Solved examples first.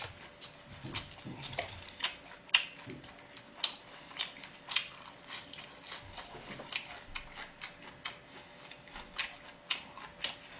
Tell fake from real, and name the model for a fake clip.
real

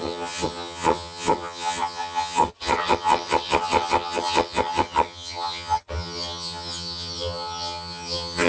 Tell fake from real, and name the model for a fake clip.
fake, vocoder, HiFi-GAN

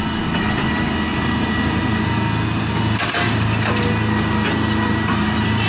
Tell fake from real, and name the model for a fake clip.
real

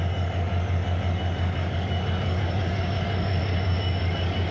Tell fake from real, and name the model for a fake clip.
fake, codec, DAC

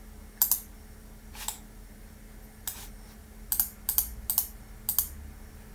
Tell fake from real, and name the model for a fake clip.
real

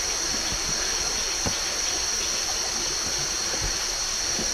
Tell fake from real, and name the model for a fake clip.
real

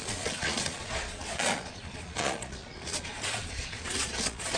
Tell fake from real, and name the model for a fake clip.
fake, vocoder, Vocos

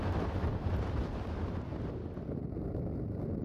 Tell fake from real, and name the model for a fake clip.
real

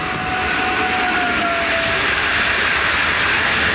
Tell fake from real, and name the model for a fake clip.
real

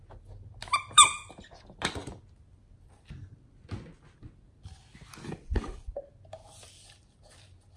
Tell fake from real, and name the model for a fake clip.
real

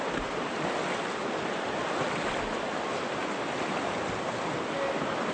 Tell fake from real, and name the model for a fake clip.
real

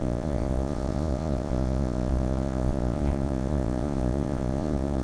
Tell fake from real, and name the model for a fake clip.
fake, vocoder, Vocos